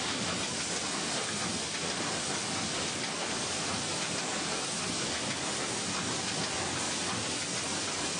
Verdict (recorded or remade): recorded